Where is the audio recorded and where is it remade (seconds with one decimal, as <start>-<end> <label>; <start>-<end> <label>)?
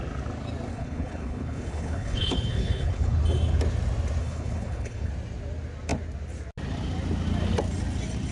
0.0-0.7 recorded; 0.7-3.2 remade; 3.2-4.2 recorded; 4.2-5.1 remade; 5.1-8.3 recorded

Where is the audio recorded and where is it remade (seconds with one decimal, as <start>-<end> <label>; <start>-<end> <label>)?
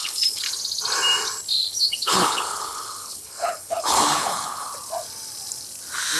0.0-0.6 remade; 0.6-1.6 recorded; 1.6-4.7 remade; 4.7-6.2 recorded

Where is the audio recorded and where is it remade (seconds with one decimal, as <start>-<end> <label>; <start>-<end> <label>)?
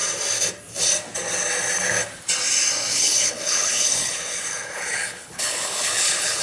0.0-2.9 recorded; 2.9-6.4 remade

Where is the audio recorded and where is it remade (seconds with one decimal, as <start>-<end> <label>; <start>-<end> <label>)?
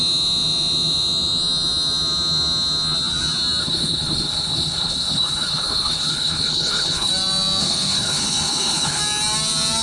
0.0-3.6 recorded; 3.6-7.1 remade; 7.1-7.6 recorded; 7.6-9.0 remade; 9.0-9.8 recorded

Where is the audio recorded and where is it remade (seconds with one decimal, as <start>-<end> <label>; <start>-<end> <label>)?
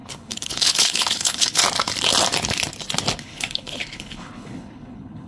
0.0-1.6 remade; 1.6-3.2 recorded; 3.2-5.3 remade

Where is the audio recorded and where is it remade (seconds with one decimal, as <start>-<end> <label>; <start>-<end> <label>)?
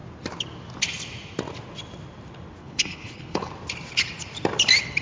0.0-2.6 recorded; 2.6-3.5 remade; 3.5-5.0 recorded